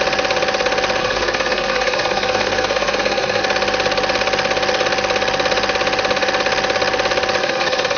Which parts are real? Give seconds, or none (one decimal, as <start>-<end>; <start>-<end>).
0.0-1.0; 3.4-7.4